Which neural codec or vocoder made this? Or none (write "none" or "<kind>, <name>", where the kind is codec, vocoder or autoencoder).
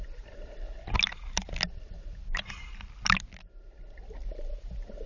none